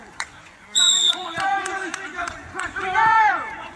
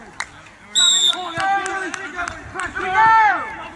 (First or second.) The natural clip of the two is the second